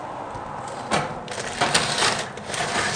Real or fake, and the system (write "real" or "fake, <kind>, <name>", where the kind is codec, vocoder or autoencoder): real